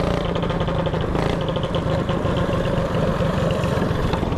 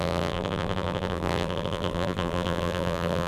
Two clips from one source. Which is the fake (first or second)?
second